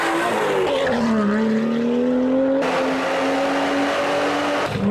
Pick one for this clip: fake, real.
real